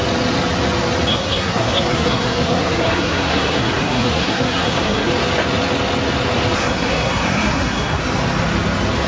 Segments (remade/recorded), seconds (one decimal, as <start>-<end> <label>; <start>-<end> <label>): 0.0-1.1 recorded; 1.1-5.1 remade; 5.1-6.6 recorded; 6.6-8.0 remade; 8.0-9.1 recorded